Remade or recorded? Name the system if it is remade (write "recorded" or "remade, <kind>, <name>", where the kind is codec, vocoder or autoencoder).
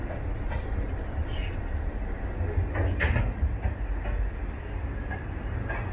recorded